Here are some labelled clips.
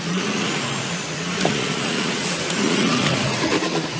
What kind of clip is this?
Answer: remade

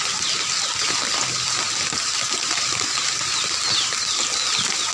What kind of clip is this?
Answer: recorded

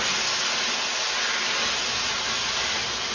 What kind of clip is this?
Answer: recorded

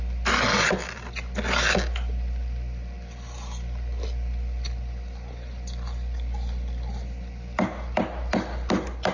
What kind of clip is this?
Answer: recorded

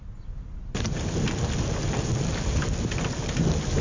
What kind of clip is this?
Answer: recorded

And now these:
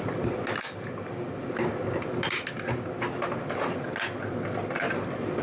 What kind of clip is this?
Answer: recorded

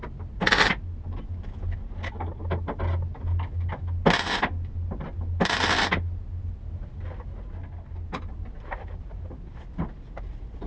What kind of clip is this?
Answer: recorded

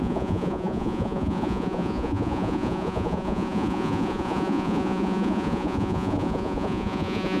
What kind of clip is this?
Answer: remade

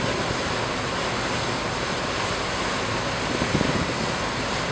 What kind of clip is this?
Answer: recorded